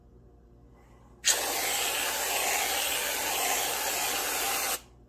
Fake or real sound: real